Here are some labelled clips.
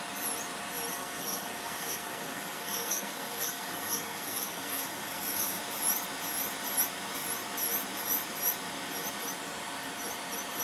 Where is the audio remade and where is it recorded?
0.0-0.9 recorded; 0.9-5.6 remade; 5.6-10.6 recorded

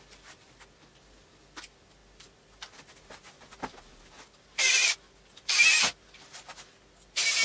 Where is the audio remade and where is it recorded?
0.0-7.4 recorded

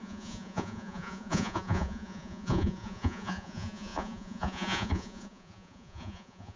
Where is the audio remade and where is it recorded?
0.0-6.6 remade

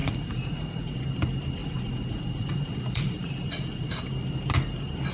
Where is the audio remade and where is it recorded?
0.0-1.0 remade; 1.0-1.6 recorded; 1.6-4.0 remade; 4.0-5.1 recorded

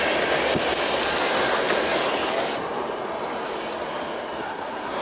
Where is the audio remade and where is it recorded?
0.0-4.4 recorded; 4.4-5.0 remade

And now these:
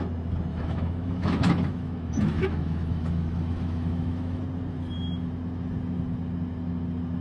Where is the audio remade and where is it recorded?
0.0-0.5 recorded; 0.5-4.4 remade; 4.4-7.2 recorded

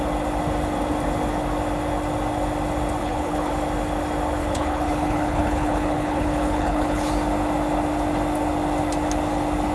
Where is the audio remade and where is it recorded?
0.0-3.0 recorded; 3.0-3.5 remade; 3.5-4.4 recorded; 4.4-7.1 remade; 7.1-9.7 recorded